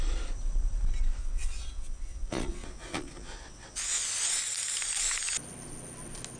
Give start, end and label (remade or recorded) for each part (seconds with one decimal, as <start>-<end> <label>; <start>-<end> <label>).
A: 0.0-1.2 recorded; 1.2-4.0 remade; 4.0-6.4 recorded